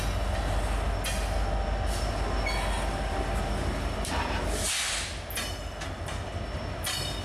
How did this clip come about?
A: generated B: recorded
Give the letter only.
B